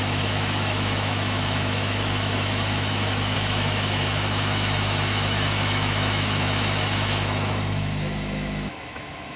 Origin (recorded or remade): remade